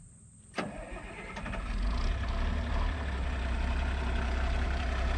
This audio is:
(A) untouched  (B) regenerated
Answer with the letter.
A